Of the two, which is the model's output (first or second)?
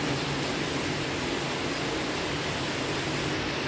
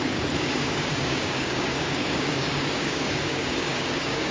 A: second